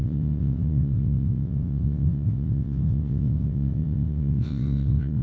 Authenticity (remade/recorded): remade